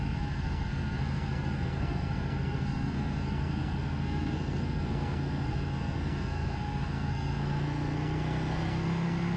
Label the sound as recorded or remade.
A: remade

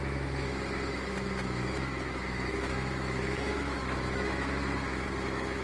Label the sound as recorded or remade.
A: remade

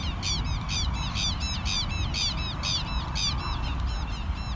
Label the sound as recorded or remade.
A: recorded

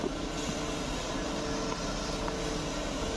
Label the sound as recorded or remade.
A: recorded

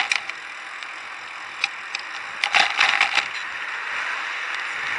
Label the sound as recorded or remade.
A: recorded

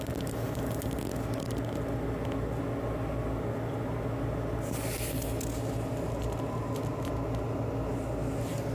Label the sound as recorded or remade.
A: recorded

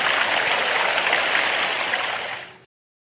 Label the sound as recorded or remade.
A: recorded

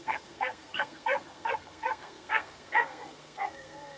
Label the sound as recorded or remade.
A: remade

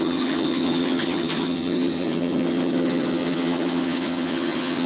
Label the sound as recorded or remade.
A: remade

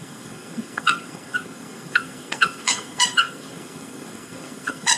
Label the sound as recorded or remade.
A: remade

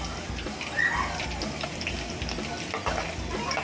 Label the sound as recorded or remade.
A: recorded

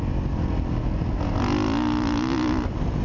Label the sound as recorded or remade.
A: recorded